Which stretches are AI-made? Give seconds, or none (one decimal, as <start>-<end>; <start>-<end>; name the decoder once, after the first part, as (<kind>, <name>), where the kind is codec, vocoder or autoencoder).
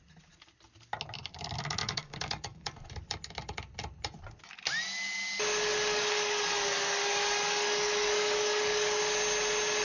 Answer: 1.8-2.9 (codec, DAC); 5.7-9.0